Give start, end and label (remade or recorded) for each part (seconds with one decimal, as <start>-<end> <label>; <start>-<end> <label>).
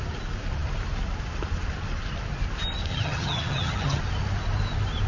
0.0-2.9 recorded; 2.9-4.0 remade; 4.0-5.1 recorded